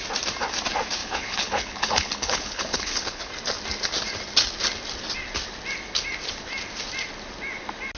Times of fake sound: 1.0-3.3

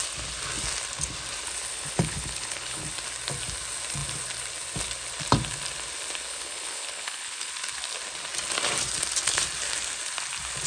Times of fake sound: 1.7-2.8; 6.3-7.5

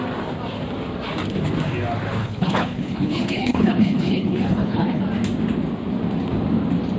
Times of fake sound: 2.2-5.0

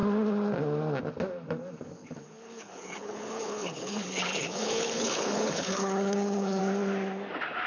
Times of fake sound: 2.0-6.6

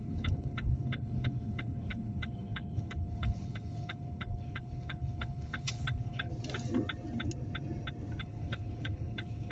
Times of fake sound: 0.0-6.3; 8.2-9.5

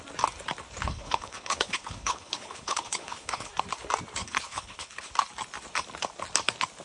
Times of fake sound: 0.8-3.5; 4.2-5.1